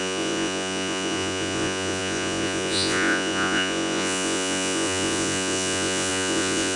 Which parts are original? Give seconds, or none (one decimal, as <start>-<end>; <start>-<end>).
none